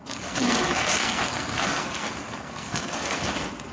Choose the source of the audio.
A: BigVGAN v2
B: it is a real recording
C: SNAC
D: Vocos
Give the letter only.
C